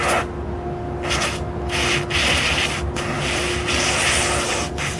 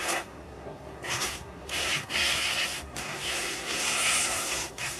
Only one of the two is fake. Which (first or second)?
second